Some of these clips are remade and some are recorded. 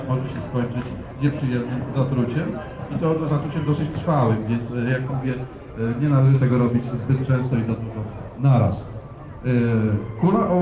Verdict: recorded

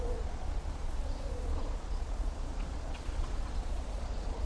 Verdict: remade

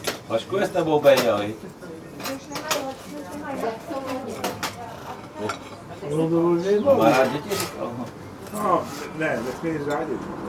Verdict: recorded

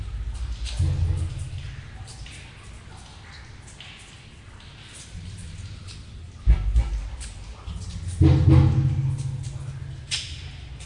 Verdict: recorded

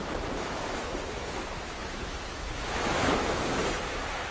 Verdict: remade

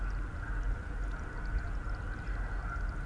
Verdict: recorded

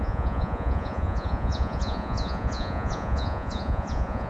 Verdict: remade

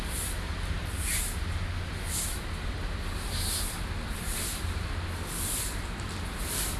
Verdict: recorded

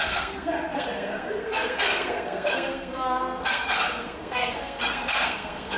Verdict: remade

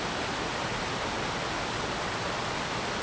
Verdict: recorded